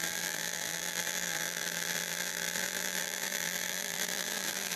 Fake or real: fake